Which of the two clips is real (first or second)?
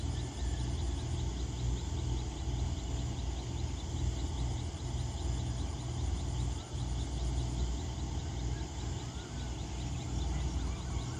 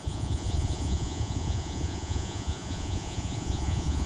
first